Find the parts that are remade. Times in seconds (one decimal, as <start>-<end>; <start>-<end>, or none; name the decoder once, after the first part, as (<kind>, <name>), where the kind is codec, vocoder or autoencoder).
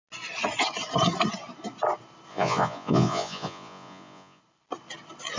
2.3-4.4 (vocoder, Vocos)